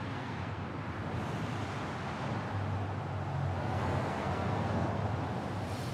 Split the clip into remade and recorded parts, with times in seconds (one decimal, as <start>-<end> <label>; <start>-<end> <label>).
0.0-0.7 remade; 0.7-3.6 recorded; 3.6-5.0 remade; 5.0-5.9 recorded

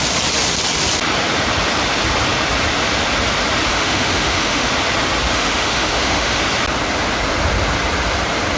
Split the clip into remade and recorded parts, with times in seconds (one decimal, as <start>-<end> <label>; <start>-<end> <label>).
0.0-3.7 recorded; 3.7-4.7 remade; 4.7-5.3 recorded; 5.3-6.4 remade; 6.4-8.6 recorded